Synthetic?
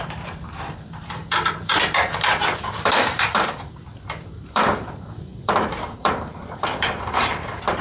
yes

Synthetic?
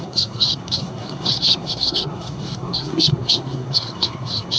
yes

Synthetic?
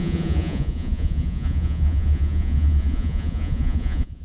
yes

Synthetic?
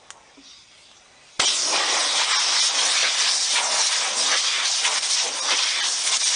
no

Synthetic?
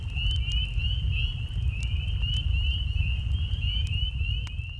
no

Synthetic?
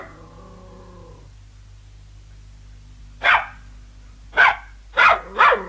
no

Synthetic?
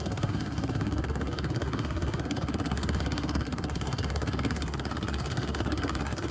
yes